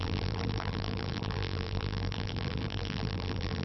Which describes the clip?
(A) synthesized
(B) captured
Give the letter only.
A